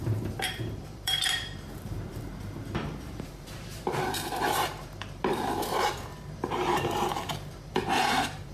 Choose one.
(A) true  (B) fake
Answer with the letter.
B